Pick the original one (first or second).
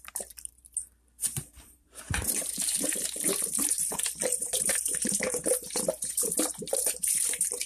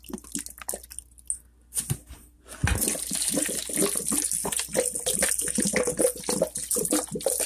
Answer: second